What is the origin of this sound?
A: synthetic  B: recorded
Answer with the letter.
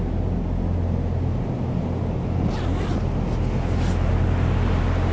B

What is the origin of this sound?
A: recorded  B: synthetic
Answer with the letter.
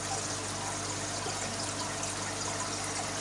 A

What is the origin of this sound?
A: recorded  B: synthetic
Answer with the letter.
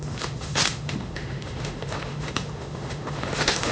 B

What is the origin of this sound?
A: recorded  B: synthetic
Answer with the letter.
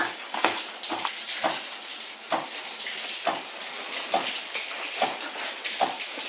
A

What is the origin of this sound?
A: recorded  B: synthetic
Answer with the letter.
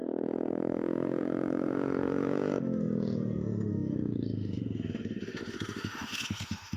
B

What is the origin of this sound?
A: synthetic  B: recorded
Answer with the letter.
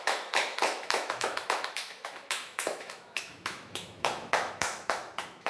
A